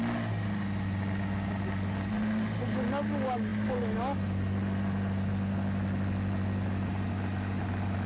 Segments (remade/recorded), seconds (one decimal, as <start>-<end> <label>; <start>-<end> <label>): 0.0-8.1 recorded